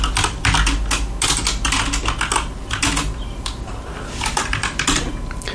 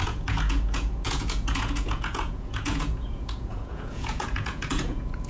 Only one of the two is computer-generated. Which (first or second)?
second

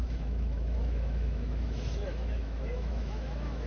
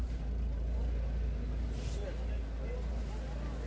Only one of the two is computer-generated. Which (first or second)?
first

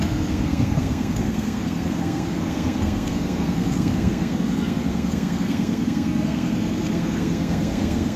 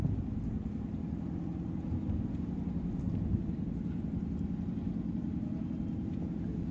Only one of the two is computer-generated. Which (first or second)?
first